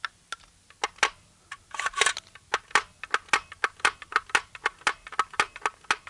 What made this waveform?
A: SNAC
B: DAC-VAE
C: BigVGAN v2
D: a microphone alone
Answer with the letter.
D